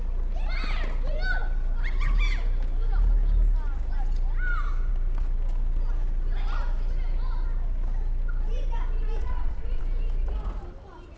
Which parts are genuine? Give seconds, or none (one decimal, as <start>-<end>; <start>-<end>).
0.0-9.2; 9.8-11.2